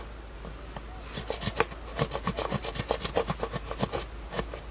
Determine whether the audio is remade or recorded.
recorded